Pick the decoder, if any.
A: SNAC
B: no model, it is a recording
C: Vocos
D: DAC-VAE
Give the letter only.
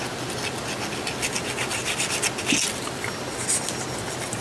B